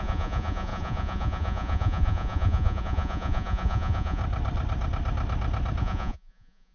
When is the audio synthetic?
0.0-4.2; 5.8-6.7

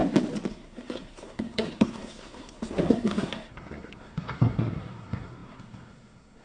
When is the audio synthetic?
0.5-6.4